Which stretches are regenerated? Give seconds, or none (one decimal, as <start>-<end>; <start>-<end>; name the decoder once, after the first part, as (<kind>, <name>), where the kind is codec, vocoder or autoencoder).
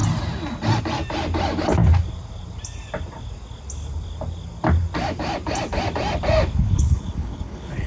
6.6-7.9 (codec, HILCodec)